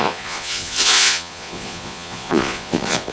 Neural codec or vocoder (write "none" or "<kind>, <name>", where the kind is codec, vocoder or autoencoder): vocoder, Vocos